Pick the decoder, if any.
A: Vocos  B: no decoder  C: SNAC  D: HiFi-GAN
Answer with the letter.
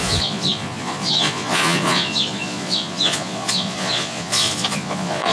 A